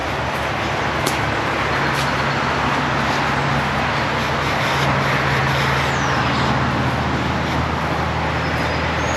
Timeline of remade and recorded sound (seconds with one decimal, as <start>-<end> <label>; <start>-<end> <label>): 0.0-9.2 recorded